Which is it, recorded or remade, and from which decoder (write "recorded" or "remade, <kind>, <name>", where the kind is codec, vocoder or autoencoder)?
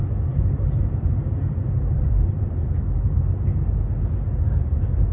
recorded